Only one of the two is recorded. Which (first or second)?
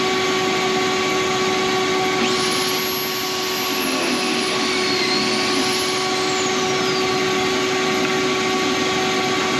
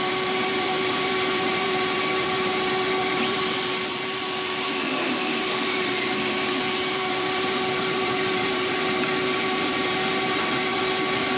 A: first